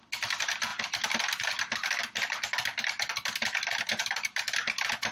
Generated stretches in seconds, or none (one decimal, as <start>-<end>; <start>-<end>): none